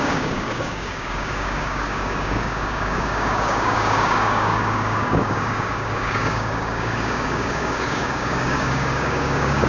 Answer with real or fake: fake